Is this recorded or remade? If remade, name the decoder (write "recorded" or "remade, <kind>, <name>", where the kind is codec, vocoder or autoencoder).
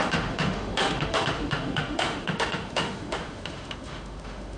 remade, autoencoder, DAC-VAE